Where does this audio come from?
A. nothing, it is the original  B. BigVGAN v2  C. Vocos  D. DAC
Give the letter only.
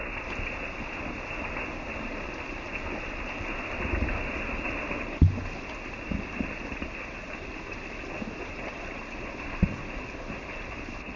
A